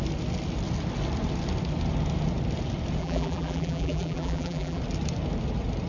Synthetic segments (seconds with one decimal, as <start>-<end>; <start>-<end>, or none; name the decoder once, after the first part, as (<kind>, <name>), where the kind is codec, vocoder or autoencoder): 3.0-4.8 (vocoder, BigVGAN v2)